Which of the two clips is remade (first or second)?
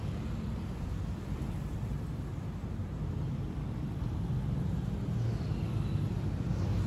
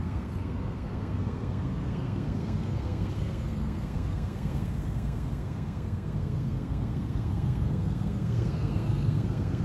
second